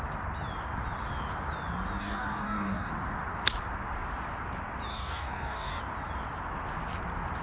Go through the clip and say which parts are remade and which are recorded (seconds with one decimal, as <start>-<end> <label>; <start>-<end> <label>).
0.0-2.0 recorded; 2.0-2.9 remade; 2.9-4.9 recorded; 4.9-5.8 remade; 5.8-7.4 recorded